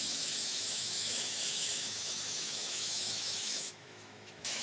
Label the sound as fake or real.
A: fake